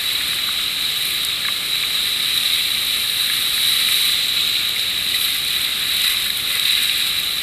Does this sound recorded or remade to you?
recorded